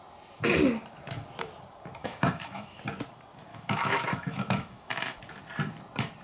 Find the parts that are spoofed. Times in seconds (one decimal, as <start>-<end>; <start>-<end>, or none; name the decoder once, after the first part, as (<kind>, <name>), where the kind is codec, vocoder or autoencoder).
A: 2.0-2.8 (autoencoder, DAC-VAE); 3.5-5.2